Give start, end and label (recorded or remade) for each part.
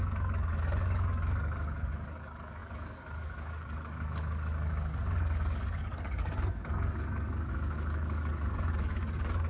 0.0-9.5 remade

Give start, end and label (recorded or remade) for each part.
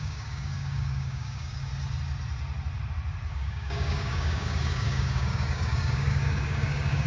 0.0-1.7 remade; 1.7-3.3 recorded; 3.3-7.1 remade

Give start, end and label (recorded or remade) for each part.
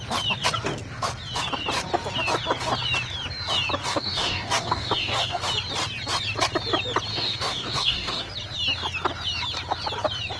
0.0-3.8 recorded; 3.8-5.4 remade; 5.4-7.1 recorded; 7.1-8.3 remade; 8.3-10.4 recorded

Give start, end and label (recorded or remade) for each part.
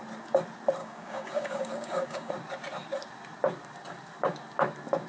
0.0-0.8 recorded; 0.8-2.3 remade; 2.3-5.1 recorded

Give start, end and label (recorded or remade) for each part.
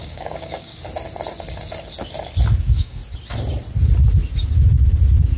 0.0-0.7 remade; 0.7-2.6 recorded; 2.6-3.0 remade; 3.0-5.4 recorded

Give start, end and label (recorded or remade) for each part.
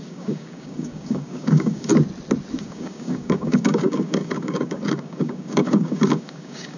0.0-1.9 remade; 1.9-2.6 recorded; 2.6-6.8 remade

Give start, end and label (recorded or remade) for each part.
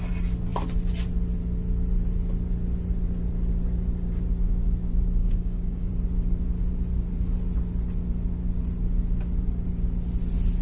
0.0-5.2 recorded; 5.2-5.9 remade; 5.9-10.6 recorded